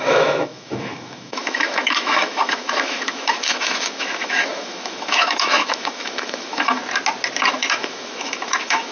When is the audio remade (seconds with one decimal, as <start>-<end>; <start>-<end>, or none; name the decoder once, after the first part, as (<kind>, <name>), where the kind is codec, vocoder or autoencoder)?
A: 0.0-6.8 (autoencoder, DAC-VAE); 7.5-8.9